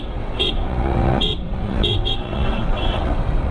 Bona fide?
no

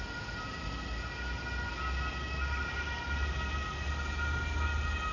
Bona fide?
yes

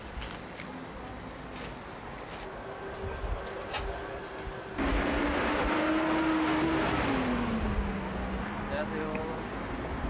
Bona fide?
yes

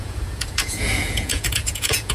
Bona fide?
no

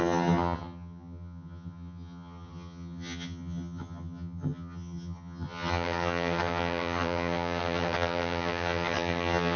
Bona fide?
no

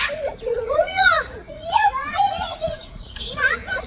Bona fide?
no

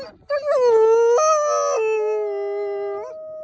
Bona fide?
yes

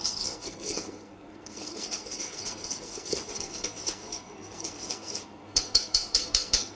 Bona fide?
no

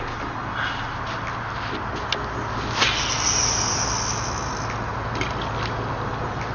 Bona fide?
yes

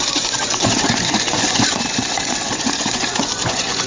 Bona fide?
no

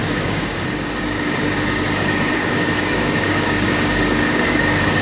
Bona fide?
no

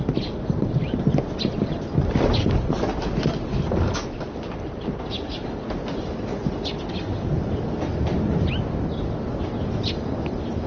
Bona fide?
yes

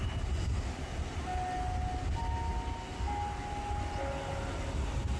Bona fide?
yes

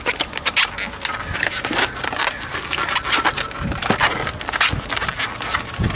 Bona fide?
yes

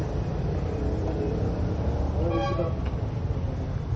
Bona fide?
yes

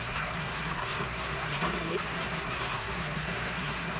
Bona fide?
no